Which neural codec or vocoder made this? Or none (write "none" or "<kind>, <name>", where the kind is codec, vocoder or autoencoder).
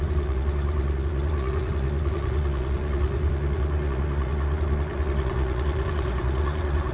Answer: vocoder, Vocos